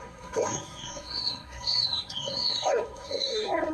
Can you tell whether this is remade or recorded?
remade